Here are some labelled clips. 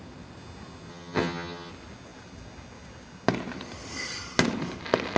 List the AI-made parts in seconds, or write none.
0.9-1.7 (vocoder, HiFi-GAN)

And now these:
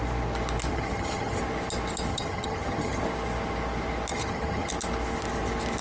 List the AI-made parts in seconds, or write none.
0.7-1.4 (vocoder, HiFi-GAN); 2.1-3.0; 4.1-4.7

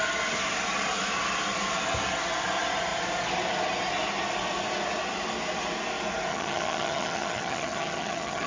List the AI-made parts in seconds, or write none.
6.3-8.5 (vocoder, HiFi-GAN)